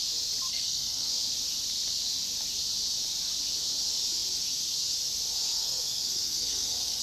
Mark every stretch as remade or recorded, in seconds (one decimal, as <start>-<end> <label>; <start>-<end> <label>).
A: 0.0-0.5 recorded; 0.5-1.1 remade; 1.1-5.5 recorded; 5.5-7.0 remade